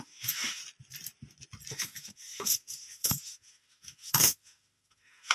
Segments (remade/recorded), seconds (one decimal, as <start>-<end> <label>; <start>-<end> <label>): 0.0-0.6 remade; 0.6-1.7 recorded; 1.7-5.3 remade